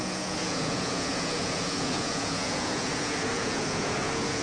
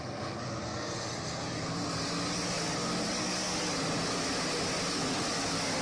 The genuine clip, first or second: second